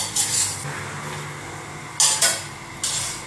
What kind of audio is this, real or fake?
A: real